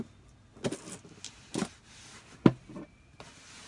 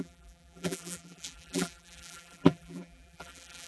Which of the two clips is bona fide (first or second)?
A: first